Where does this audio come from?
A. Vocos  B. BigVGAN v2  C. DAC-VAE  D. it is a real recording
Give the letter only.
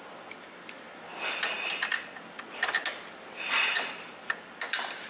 D